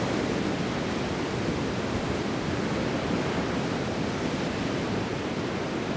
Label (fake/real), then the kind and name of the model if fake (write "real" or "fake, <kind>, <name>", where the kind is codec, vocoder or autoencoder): real